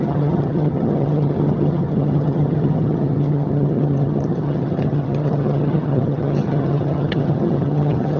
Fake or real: fake